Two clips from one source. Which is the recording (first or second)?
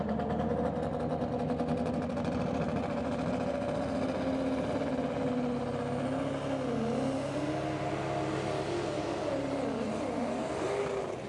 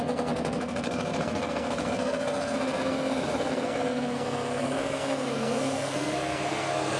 first